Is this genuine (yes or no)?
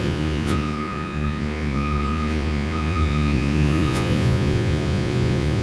no